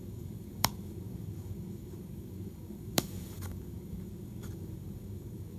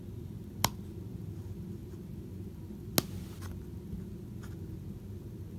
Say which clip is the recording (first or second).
second